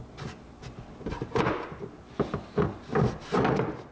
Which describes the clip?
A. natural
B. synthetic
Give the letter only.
A